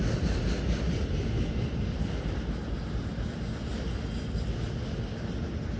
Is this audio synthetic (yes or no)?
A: no